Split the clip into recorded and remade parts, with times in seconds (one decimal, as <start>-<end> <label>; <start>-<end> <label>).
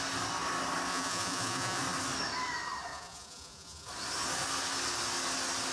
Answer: 0.0-0.9 recorded; 0.9-1.8 remade; 1.8-2.9 recorded; 2.9-3.9 remade; 3.9-5.7 recorded